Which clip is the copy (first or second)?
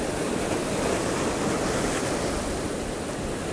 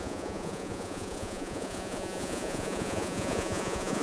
second